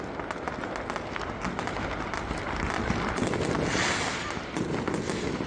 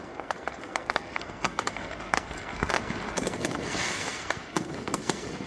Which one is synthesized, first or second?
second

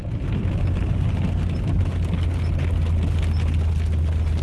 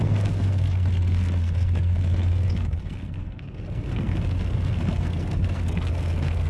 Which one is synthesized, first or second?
second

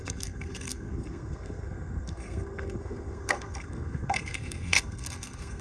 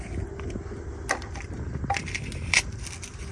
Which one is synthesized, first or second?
first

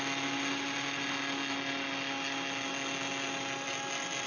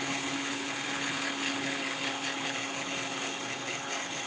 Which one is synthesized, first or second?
second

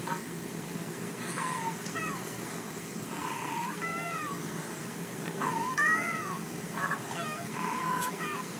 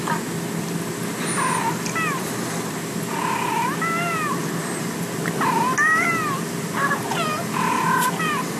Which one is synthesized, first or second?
first